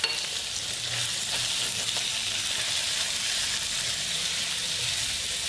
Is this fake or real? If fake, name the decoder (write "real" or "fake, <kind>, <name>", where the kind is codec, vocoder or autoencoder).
real